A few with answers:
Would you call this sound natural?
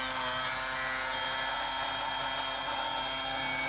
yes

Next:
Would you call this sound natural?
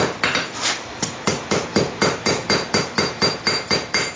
no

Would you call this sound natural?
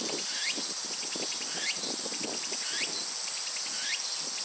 yes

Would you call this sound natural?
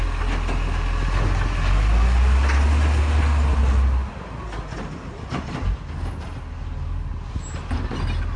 yes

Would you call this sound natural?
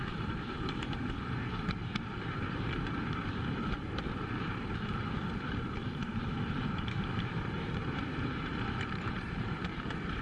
no